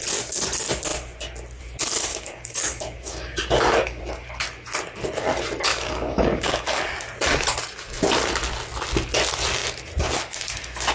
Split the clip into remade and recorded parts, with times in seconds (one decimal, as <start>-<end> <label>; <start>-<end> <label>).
0.0-2.1 recorded; 2.1-4.0 remade; 4.0-5.7 recorded; 5.7-6.9 remade; 6.9-10.9 recorded